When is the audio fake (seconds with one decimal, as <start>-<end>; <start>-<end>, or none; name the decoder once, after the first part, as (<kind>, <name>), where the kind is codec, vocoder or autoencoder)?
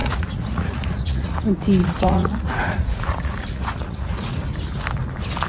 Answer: 0.0-1.4 (vocoder, Vocos); 1.8-4.3